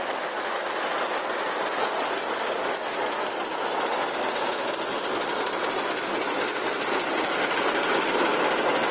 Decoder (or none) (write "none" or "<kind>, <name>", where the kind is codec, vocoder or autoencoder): none